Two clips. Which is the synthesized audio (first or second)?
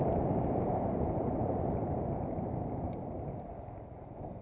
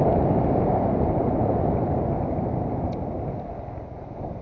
first